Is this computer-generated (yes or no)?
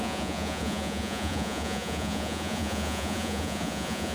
yes